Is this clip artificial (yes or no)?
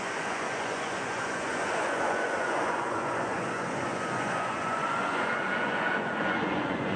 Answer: yes